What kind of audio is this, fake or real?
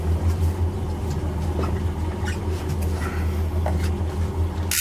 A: real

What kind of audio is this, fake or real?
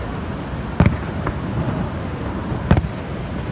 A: real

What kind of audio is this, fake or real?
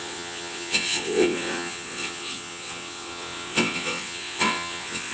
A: fake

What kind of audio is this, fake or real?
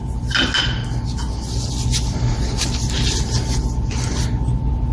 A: real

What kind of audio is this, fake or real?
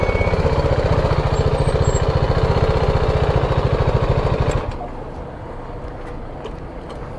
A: real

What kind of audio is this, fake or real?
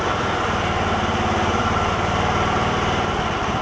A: fake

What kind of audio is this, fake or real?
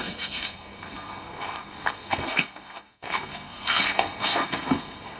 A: fake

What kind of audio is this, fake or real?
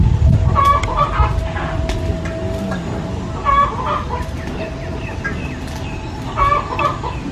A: real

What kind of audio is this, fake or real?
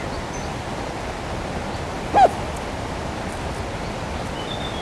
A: real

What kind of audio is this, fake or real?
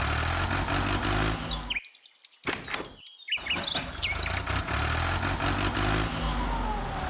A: real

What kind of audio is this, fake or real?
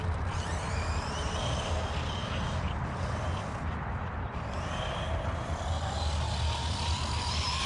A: real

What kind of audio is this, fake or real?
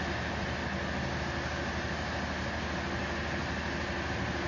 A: real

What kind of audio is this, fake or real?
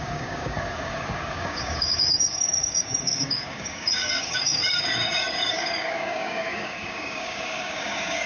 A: fake